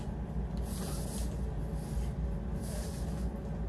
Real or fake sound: real